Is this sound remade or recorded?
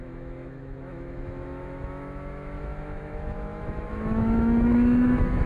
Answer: remade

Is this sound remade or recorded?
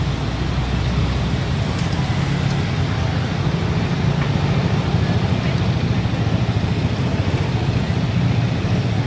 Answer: recorded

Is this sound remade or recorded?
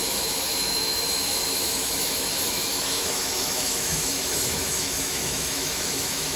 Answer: remade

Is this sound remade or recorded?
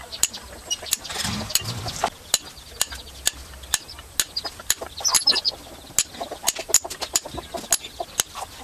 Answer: recorded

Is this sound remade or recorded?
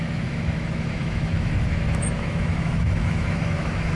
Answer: remade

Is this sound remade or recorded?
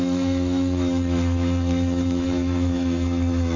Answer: remade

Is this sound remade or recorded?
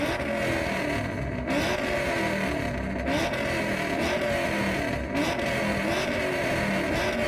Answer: recorded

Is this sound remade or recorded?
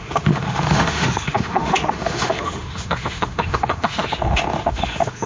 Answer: remade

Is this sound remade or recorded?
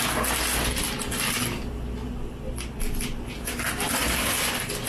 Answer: recorded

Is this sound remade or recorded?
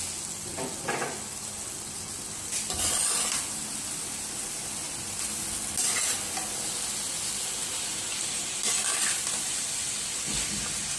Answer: recorded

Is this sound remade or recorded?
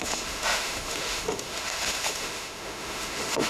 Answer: remade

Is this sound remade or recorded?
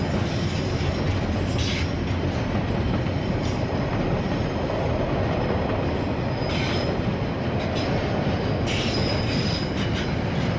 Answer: recorded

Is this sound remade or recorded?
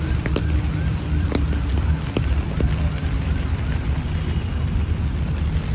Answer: recorded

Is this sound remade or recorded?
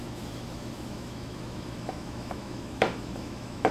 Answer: remade